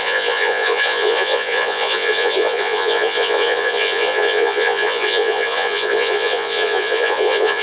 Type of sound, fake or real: fake